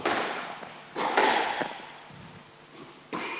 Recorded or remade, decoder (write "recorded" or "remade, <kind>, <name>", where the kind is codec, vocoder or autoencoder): recorded